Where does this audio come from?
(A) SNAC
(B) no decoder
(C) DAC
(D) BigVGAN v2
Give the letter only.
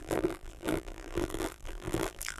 D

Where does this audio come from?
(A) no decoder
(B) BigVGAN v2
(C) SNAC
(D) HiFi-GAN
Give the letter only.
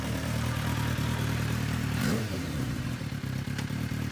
B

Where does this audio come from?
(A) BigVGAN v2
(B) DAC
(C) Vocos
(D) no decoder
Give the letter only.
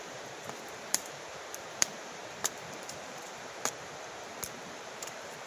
A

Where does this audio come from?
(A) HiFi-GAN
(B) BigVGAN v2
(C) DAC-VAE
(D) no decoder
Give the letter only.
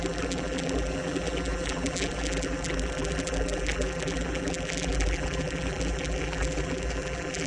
B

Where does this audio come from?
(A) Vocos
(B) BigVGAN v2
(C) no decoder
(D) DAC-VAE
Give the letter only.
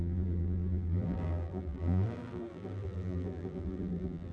B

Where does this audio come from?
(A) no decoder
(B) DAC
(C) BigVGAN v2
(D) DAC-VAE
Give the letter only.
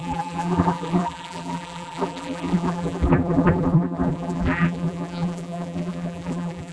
C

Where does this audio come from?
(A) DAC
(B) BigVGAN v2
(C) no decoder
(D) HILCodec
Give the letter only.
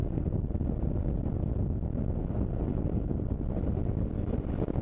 C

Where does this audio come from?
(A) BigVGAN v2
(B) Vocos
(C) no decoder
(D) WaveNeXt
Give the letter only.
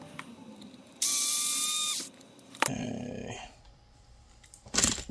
A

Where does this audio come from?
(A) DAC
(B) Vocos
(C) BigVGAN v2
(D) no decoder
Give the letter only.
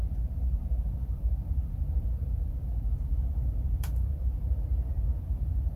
C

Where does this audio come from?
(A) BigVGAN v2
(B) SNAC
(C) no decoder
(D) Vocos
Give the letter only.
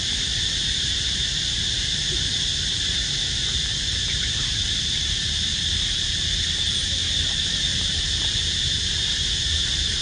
A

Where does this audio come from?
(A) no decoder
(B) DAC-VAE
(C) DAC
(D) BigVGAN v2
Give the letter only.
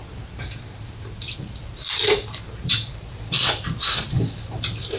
D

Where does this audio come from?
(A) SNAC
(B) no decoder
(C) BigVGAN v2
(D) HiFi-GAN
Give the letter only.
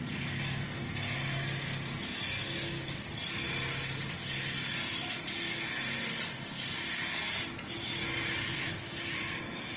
B